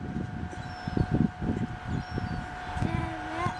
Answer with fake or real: real